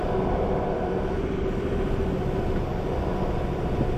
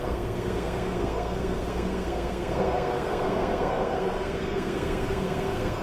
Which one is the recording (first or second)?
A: first